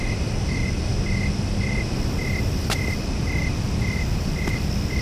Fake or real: real